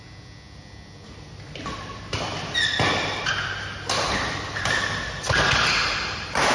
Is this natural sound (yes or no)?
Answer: yes